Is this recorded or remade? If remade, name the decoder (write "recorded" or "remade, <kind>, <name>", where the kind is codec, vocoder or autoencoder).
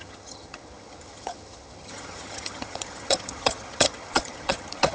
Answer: remade, vocoder, HiFi-GAN